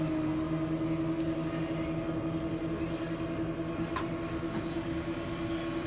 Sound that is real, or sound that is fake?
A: real